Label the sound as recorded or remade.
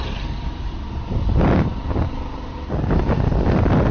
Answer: recorded